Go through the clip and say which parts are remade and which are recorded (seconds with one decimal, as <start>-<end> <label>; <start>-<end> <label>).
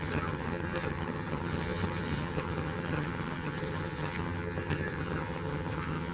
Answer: 0.0-6.1 remade